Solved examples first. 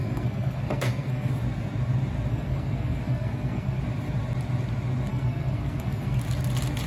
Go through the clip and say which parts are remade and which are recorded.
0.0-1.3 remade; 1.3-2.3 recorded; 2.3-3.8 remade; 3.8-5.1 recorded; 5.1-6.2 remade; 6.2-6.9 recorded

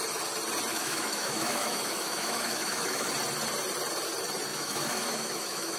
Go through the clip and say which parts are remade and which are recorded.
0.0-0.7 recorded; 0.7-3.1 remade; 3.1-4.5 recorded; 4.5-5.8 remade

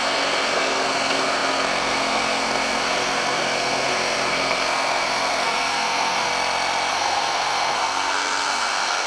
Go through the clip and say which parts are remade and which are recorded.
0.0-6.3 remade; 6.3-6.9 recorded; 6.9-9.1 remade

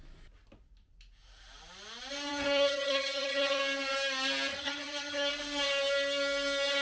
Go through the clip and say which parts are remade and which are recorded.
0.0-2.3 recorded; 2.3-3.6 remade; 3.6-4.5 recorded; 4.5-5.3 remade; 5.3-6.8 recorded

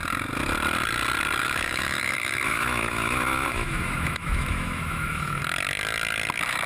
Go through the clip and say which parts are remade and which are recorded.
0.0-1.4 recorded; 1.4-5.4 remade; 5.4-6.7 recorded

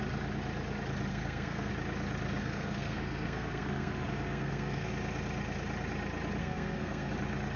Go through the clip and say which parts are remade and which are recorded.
0.0-1.1 recorded; 1.1-1.7 remade; 1.7-2.4 recorded; 2.4-4.9 remade; 4.9-6.4 recorded; 6.4-7.1 remade; 7.1-7.6 recorded